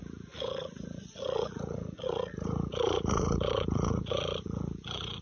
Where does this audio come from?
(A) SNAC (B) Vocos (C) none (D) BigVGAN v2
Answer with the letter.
B